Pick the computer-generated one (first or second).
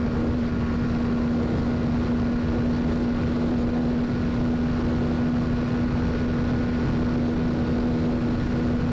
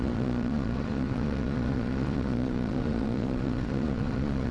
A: second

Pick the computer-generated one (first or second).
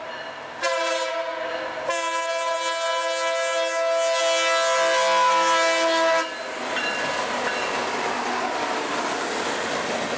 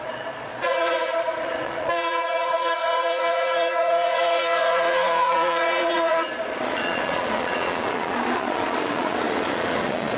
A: second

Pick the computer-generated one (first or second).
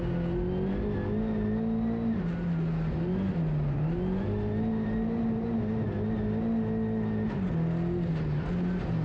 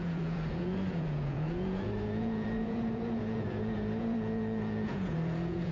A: second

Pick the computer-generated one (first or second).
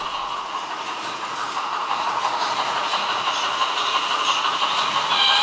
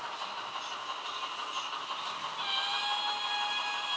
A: first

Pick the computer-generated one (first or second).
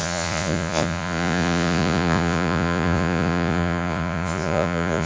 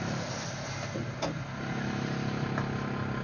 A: first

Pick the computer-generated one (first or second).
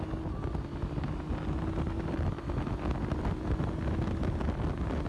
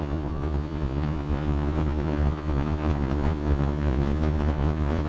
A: second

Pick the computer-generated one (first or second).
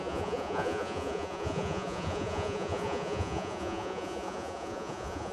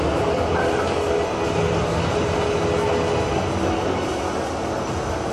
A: first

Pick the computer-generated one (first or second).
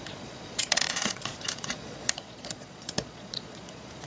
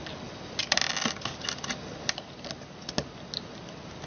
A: first